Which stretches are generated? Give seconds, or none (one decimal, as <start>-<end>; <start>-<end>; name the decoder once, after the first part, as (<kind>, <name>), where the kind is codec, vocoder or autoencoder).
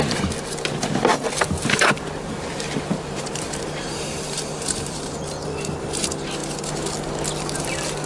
1.1-5.2 (vocoder, BigVGAN v2)